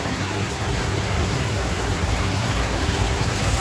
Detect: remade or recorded remade